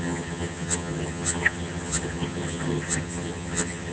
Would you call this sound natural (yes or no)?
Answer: no